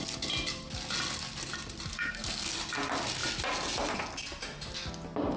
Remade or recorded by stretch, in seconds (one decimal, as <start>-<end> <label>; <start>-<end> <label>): 0.0-1.9 recorded; 1.9-2.5 remade; 2.5-5.4 recorded